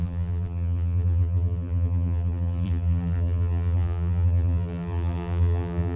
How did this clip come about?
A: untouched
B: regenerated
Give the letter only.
B